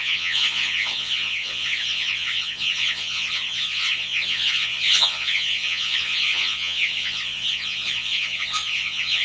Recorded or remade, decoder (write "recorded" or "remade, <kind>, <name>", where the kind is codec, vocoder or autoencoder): remade, vocoder, Vocos